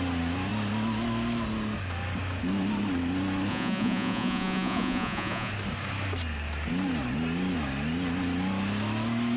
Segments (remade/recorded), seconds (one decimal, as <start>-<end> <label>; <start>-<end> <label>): 0.0-3.5 recorded; 3.5-5.5 remade; 5.5-9.4 recorded